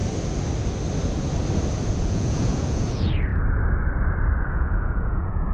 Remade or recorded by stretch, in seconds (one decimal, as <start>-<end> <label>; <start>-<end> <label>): 0.0-1.9 recorded; 1.9-3.3 remade; 3.3-4.5 recorded; 4.5-5.5 remade